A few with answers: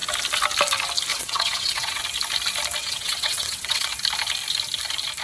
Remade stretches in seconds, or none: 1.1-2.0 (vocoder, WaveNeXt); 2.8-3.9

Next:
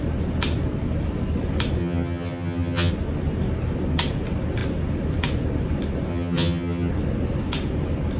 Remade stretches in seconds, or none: 1.8-2.9 (vocoder, HiFi-GAN); 6.1-6.9

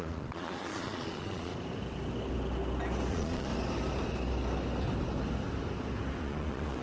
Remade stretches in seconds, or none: 0.0-1.5 (vocoder, Vocos); 3.1-3.5; 6.2-6.8

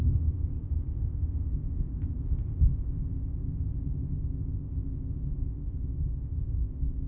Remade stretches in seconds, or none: 0.0-7.1 (codec, ZipCodec)

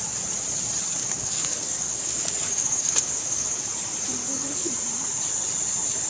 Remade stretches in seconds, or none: 1.0-3.7 (codec, DAC); 4.2-4.7

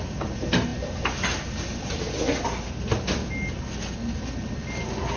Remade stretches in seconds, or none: none

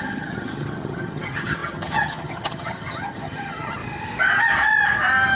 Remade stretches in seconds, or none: 0.0-3.8 (vocoder, HiFi-GAN)